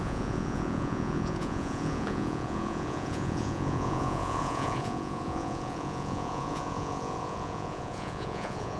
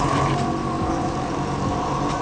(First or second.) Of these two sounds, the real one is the second